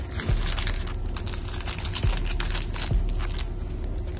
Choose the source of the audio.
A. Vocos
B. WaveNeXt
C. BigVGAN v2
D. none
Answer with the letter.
D